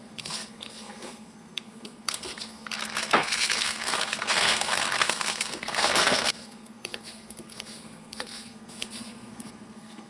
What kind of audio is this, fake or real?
fake